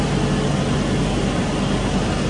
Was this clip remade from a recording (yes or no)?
no